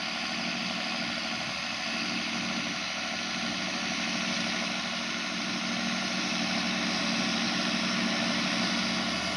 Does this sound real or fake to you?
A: real